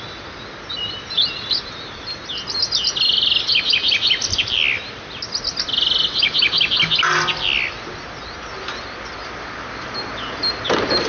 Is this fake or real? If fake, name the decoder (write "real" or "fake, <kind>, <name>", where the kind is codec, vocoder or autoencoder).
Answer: real